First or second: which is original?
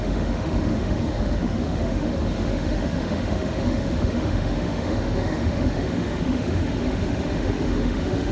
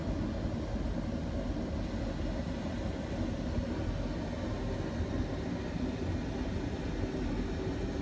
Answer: second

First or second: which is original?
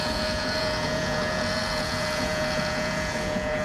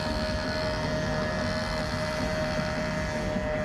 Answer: second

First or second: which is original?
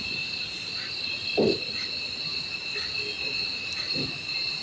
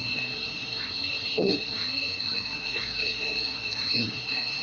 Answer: first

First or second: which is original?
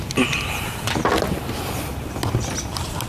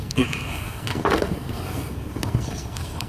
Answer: first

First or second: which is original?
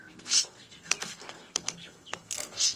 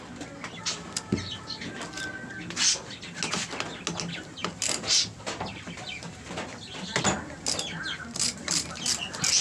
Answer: second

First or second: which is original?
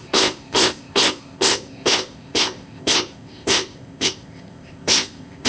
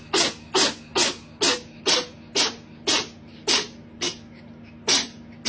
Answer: second